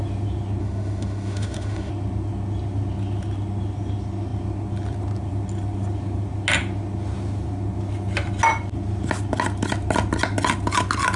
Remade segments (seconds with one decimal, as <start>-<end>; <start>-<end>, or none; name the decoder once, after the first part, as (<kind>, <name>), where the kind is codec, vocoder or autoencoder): 0.6-1.9 (autoencoder, DAC-VAE)